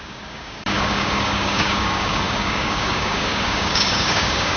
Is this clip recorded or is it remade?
remade